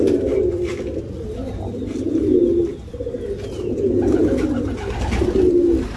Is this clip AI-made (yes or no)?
no